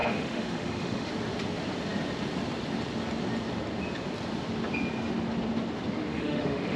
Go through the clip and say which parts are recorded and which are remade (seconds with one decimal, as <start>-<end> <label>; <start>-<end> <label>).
0.0-1.1 remade; 1.1-6.1 recorded; 6.1-6.8 remade